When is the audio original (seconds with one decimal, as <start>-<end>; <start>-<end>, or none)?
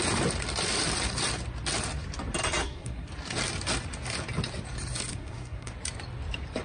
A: 0.0-2.6; 3.1-5.1; 5.7-6.6